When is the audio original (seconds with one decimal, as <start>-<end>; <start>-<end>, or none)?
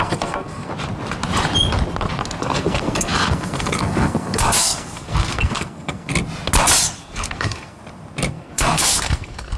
0.7-2.4; 6.1-7.0; 7.8-8.3